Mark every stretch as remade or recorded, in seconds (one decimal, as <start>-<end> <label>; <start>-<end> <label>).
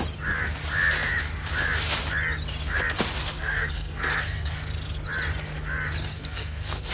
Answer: 0.0-3.2 recorded; 3.2-4.6 remade; 4.6-6.1 recorded; 6.1-6.9 remade